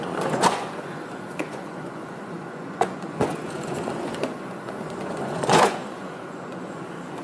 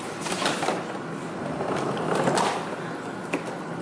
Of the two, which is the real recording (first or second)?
second